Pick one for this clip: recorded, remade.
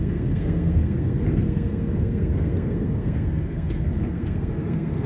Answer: remade